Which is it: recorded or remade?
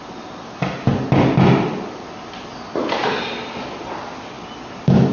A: recorded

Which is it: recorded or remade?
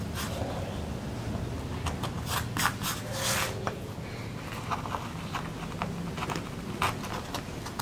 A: recorded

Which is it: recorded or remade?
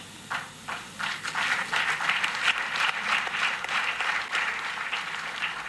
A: recorded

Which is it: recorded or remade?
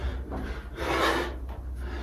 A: recorded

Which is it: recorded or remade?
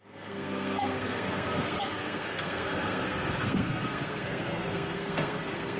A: remade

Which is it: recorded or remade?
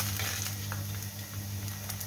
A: recorded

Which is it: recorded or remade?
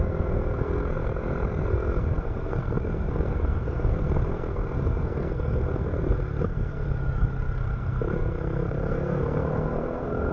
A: remade